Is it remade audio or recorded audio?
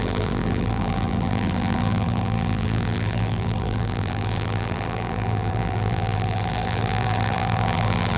remade